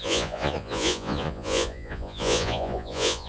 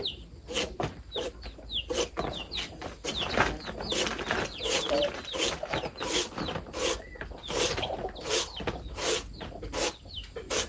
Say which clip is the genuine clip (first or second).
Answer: second